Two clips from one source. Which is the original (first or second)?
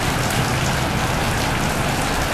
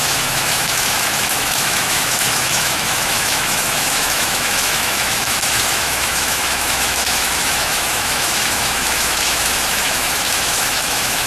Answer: first